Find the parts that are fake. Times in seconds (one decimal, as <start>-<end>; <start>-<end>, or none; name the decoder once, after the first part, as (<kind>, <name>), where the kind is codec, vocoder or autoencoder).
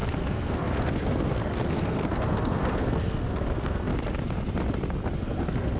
0.0-3.9 (codec, SNAC); 5.2-5.8